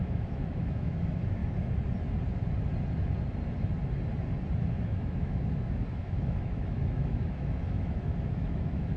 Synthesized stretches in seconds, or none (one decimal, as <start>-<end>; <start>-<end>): 0.0-1.4; 4.7-9.0